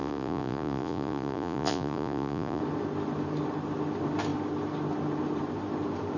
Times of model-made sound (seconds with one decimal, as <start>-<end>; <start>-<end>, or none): 0.0-2.6